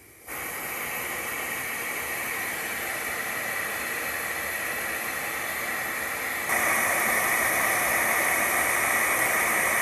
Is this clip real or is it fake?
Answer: real